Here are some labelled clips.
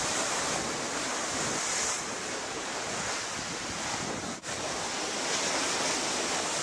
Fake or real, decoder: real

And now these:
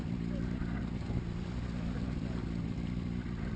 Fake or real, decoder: real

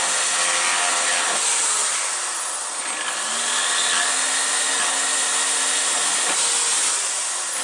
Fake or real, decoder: real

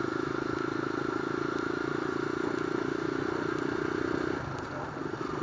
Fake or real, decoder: real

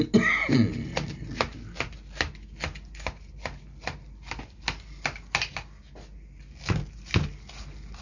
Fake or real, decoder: real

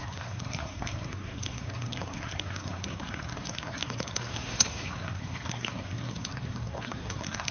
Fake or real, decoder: fake, codec, SNAC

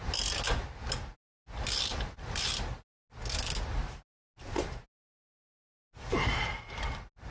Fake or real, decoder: real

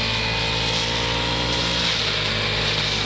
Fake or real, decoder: real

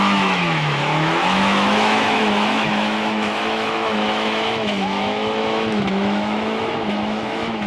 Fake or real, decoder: fake, autoencoder, DAC-VAE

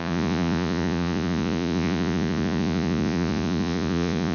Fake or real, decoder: fake, vocoder, Vocos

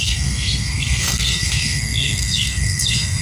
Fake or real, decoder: fake, codec, SNAC